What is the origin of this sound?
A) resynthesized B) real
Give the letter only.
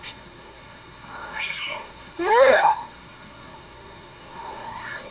A